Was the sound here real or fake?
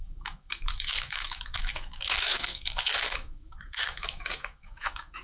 fake